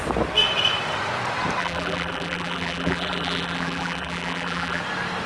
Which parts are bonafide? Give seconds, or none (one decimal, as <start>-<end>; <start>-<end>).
0.0-1.6; 4.8-5.3